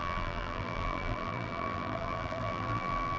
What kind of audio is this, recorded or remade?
remade